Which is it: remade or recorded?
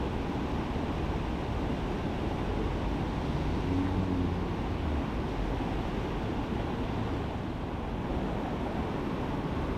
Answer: recorded